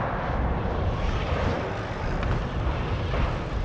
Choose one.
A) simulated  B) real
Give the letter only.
B